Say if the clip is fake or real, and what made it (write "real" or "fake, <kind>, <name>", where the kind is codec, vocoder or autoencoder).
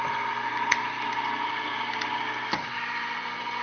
real